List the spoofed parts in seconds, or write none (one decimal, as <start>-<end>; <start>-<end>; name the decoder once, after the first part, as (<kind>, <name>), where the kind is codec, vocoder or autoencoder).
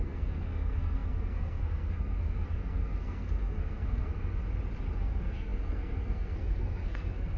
0.0-4.4 (codec, SNAC); 5.0-7.4